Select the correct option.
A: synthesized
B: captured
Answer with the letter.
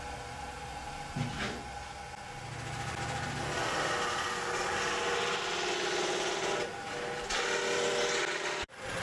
B